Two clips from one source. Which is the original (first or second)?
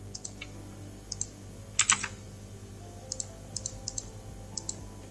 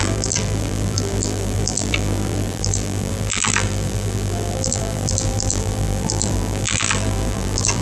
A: first